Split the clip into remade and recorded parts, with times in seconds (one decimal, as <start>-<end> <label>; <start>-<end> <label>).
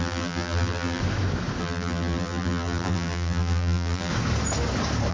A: 0.0-1.0 remade; 1.0-1.6 recorded; 1.6-4.1 remade; 4.1-5.1 recorded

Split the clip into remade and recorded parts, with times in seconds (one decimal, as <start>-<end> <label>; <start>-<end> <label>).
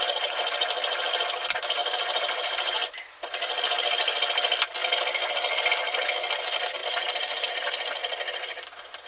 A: 0.0-1.8 recorded; 1.8-3.6 remade; 3.6-6.8 recorded; 6.8-7.7 remade; 7.7-9.1 recorded